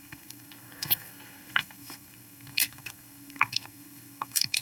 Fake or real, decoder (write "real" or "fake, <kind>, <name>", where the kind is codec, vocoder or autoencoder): fake, codec, SNAC